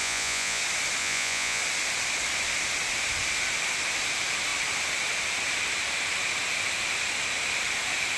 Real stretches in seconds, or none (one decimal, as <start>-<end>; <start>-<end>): 0.6-1.0; 1.6-8.2

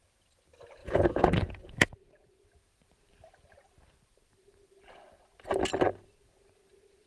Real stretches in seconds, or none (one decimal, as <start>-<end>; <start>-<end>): 0.0-0.8; 2.5-7.1

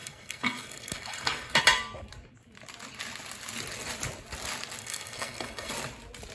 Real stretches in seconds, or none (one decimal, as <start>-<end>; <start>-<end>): 1.6-4.8; 5.7-6.3

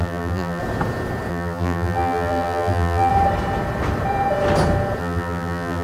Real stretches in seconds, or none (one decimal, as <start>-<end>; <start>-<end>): 0.6-1.3; 3.1-5.0

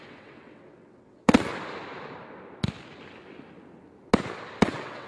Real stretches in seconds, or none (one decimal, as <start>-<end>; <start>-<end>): 1.5-4.6

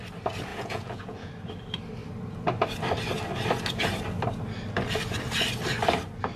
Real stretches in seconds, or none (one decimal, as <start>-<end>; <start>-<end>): 0.0-0.5; 1.3-6.4

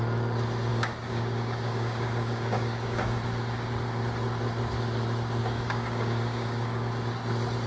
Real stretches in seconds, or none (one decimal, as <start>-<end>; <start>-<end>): 0.0-0.7; 3.2-5.4; 6.9-7.7

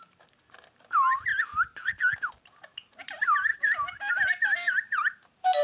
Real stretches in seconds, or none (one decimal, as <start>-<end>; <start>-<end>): 1.3-2.3; 3.5-4.1